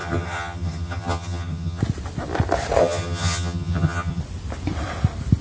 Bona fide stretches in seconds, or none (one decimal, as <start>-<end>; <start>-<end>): 1.8-2.8; 4.2-5.4